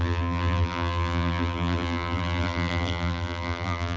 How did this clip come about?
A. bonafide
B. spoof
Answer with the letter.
B